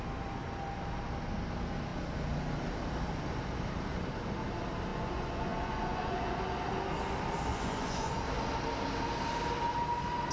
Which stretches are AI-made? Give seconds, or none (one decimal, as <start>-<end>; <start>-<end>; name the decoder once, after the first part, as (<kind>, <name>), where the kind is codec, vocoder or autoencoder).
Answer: 4.9-6.4 (vocoder, Vocos); 7.5-8.1